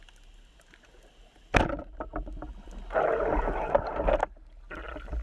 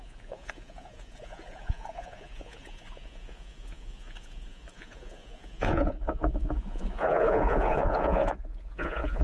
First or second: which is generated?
second